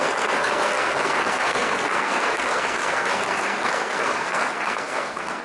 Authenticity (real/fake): fake